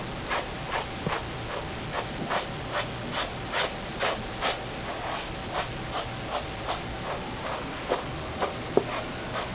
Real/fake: real